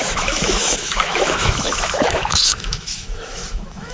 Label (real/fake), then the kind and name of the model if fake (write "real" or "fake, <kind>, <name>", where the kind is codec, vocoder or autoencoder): fake, autoencoder, DAC-VAE